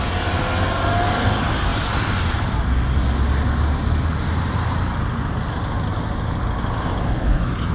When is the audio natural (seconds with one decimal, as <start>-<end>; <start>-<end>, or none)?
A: 0.0-7.7